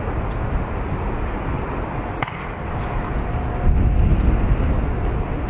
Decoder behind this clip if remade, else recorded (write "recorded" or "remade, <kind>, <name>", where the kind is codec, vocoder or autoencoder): recorded